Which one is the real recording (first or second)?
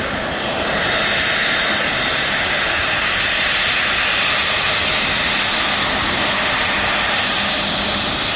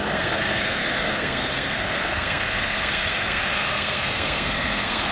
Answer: first